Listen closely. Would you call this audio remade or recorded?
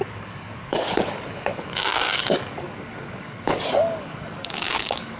remade